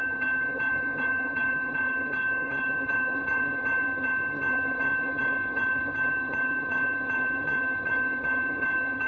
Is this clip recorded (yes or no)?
no